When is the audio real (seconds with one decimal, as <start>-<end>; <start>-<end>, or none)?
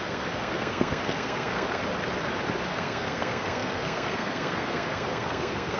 1.8-2.7